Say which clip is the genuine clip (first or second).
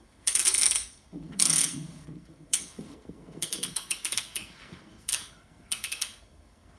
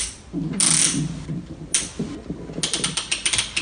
second